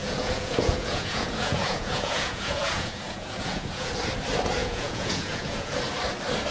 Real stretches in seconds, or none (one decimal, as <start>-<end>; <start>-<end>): 3.9-4.6; 5.8-6.5